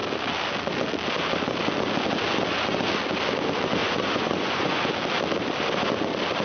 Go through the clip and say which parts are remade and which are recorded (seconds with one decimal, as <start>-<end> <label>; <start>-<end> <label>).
0.0-3.8 recorded; 3.8-4.8 remade; 4.8-6.4 recorded